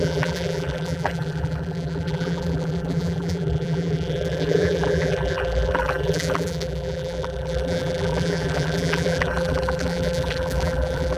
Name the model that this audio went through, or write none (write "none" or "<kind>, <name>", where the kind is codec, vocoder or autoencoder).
vocoder, BigVGAN v2